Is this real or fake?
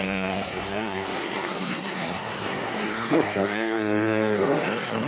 fake